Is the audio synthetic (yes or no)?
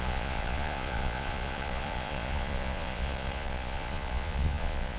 yes